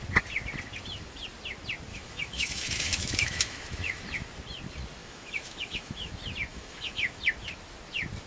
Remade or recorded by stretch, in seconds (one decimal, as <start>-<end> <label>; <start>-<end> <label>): 0.0-1.9 recorded; 1.9-4.0 remade; 4.0-5.0 recorded; 5.0-6.1 remade; 6.1-6.5 recorded; 6.5-7.2 remade; 7.2-8.3 recorded